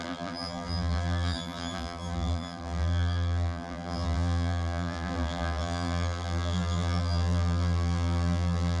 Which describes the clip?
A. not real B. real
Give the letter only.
A